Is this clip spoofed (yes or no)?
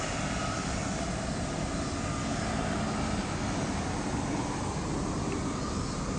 no